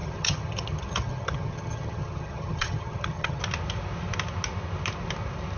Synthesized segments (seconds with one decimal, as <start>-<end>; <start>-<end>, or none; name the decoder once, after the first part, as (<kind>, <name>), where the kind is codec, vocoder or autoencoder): 0.0-3.4 (vocoder, HiFi-GAN)